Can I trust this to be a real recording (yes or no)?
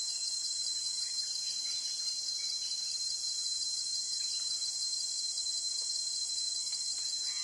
yes